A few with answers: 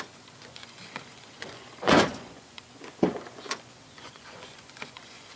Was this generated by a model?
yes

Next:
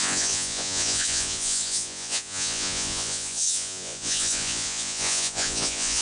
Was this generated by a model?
yes